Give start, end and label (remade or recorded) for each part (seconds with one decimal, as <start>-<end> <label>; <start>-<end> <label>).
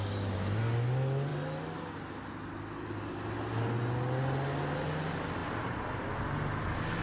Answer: 0.0-7.0 recorded